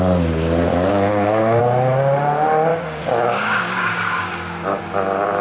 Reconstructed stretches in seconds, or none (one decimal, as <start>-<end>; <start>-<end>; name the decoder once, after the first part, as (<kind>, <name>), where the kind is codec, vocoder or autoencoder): 0.9-1.6 (codec, DAC); 2.7-4.8

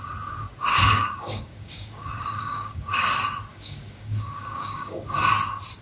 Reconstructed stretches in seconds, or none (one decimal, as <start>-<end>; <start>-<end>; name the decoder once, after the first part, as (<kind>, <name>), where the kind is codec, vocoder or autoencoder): 0.7-3.0 (codec, DAC); 3.5-5.3

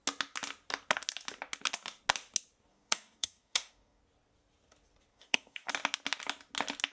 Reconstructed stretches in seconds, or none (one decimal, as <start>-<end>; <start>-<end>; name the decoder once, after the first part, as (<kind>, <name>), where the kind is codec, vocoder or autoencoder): 2.7-4.0 (codec, DAC); 5.1-5.7

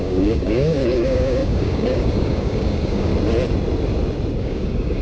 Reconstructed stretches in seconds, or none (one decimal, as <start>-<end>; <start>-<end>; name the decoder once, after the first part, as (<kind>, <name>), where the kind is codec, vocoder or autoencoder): 0.0-3.1 (codec, DAC); 4.4-5.0

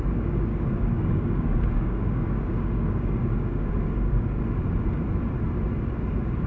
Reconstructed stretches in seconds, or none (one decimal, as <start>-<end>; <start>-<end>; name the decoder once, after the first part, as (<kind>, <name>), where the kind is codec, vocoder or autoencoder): 0.5-4.4 (codec, DAC)

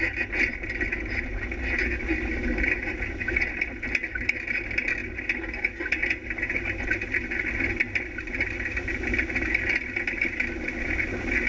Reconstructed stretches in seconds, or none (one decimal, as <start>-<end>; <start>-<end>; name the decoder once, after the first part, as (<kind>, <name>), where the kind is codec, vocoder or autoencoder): none

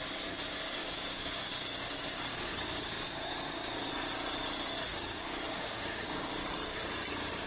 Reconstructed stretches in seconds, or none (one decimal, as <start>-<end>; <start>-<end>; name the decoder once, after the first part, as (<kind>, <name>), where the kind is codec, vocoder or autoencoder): 0.8-1.9 (codec, DAC); 2.3-3.9; 4.9-6.3

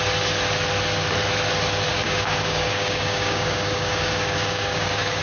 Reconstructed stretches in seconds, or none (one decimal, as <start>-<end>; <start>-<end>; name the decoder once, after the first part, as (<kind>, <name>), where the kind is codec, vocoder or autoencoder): 1.9-5.2 (codec, DAC)